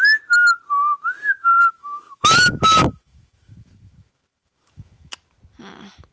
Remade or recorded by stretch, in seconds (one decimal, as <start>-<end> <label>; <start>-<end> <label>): 0.0-1.6 recorded; 1.6-5.1 remade; 5.1-6.1 recorded